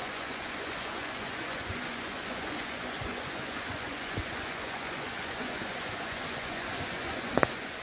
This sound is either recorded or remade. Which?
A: remade